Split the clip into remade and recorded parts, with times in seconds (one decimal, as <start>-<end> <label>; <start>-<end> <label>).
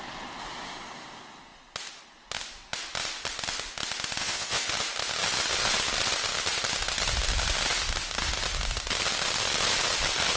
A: 0.0-4.2 recorded; 4.2-4.7 remade; 4.7-10.4 recorded